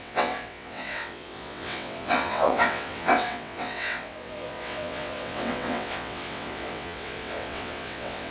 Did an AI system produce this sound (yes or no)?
yes